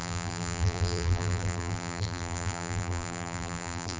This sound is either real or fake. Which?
fake